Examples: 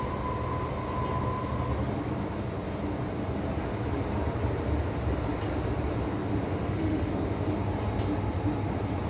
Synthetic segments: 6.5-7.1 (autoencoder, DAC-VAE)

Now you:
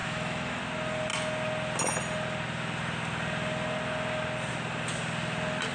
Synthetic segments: 0.0-0.6 (autoencoder, DAC-VAE)

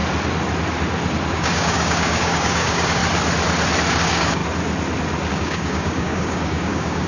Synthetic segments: 1.3-3.0 (codec, DAC); 4.0-4.4; 5.3-7.1

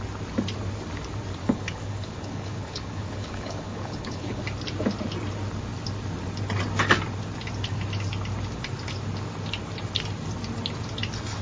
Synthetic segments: 1.4-4.4 (codec, HILCodec)

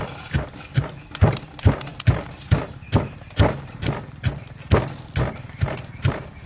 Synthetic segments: none

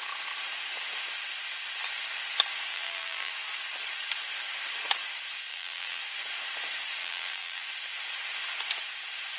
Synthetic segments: 2.7-3.3 (vocoder, BigVGAN v2); 5.5-6.0; 7.0-7.6